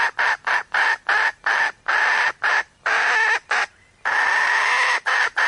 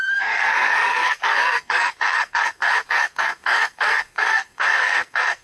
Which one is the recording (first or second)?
first